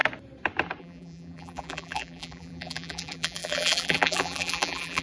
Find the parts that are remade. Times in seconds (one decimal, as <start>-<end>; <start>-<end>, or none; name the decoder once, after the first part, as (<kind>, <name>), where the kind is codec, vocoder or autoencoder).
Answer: 0.8-5.0 (vocoder, BigVGAN v2)